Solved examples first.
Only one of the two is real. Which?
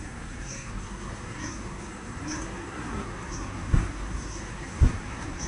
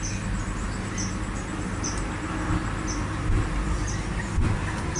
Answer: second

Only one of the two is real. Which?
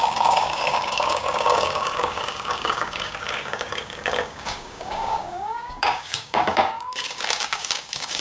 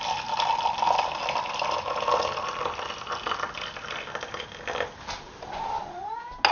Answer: second